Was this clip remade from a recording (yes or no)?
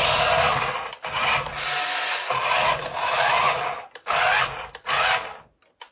no